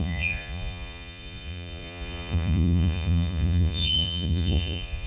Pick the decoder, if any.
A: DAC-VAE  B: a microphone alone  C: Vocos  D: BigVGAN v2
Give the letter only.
C